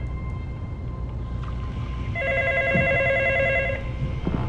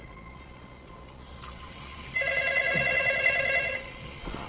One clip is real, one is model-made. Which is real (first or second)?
first